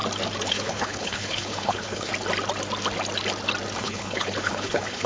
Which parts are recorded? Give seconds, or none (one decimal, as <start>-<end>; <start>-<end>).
0.0-0.5; 2.1-3.8